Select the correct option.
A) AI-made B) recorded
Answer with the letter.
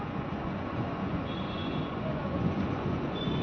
A